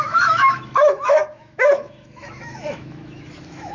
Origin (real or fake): fake